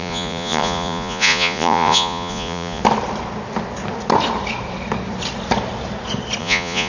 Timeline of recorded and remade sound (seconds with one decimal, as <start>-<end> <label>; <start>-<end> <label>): 0.0-2.8 remade; 2.8-6.4 recorded; 6.4-6.9 remade